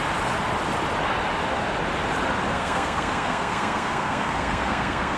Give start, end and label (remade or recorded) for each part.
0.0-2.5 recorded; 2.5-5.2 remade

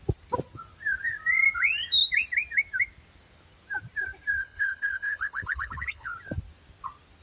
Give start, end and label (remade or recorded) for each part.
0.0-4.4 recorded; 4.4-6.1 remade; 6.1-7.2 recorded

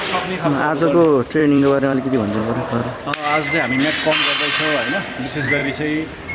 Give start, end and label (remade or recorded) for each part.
0.0-1.4 recorded; 1.4-2.4 remade; 2.4-5.6 recorded; 5.6-6.3 remade